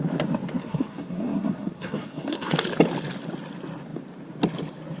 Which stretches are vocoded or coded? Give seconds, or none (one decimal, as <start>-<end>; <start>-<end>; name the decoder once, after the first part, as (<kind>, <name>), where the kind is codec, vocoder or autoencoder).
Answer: 0.6-2.5 (codec, SNAC)